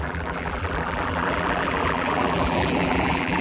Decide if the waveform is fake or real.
fake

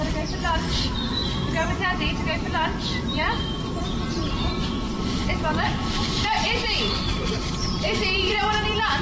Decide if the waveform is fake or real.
fake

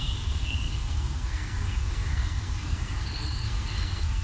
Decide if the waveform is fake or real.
fake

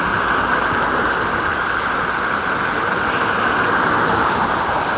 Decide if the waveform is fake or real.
real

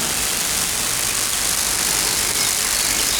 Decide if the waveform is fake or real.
real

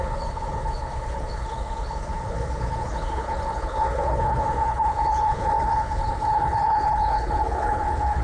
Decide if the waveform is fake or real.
fake